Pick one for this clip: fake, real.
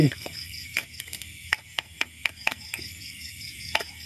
fake